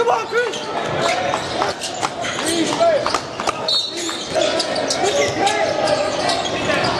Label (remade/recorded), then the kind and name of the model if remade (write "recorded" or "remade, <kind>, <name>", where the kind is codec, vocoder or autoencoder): recorded